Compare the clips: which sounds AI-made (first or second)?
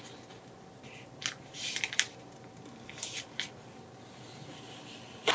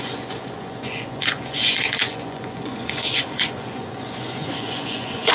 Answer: second